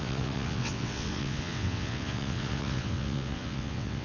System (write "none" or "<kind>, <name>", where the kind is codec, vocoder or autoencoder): vocoder, WaveNeXt